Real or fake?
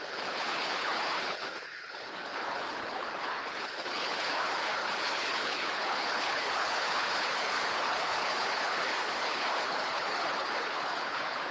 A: fake